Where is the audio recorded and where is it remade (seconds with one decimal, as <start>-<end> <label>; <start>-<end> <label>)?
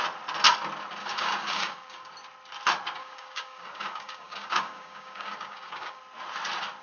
0.0-1.0 recorded; 1.0-2.1 remade; 2.1-3.0 recorded; 3.0-6.0 remade; 6.0-6.8 recorded